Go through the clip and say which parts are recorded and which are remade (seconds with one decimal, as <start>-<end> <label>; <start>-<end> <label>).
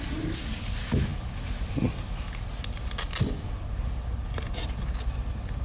0.0-5.6 recorded